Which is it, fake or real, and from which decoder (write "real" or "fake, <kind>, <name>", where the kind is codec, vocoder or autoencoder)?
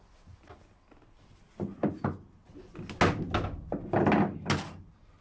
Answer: real